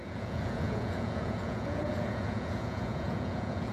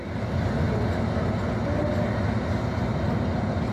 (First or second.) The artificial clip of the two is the first